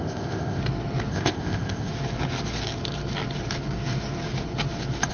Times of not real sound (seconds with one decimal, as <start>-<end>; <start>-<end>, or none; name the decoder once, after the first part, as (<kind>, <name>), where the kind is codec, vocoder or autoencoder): 0.0-0.6 (codec, ZipCodec); 1.1-1.9

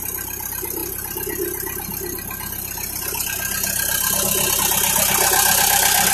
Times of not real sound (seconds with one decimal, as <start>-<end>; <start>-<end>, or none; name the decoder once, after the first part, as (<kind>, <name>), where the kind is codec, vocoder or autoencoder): none